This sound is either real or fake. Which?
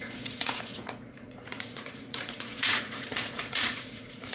fake